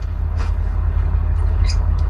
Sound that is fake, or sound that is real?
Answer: fake